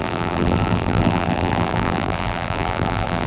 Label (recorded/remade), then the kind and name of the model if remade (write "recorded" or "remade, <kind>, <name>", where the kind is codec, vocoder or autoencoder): remade, vocoder, BigVGAN v2